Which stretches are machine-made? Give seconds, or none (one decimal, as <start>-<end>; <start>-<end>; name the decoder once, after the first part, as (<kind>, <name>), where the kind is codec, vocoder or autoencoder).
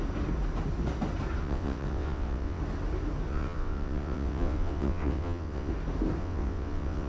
1.4-2.6 (vocoder, WaveNeXt); 3.3-5.7; 6.2-7.1